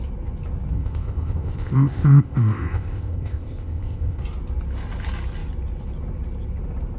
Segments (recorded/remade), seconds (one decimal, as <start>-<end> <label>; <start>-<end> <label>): 0.0-0.7 recorded; 0.7-4.2 remade; 4.2-7.0 recorded